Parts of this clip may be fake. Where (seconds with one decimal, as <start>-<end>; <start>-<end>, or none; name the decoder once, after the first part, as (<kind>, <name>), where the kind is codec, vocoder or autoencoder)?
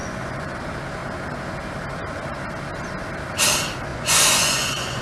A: 0.0-0.6 (vocoder, Vocos); 3.9-5.0